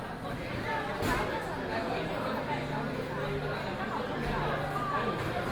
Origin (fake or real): real